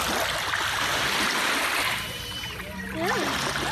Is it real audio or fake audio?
real